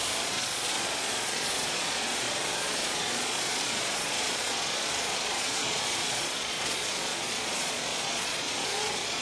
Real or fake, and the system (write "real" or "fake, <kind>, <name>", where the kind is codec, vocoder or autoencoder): fake, vocoder, Vocos